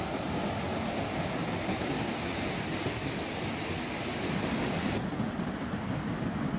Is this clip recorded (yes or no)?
yes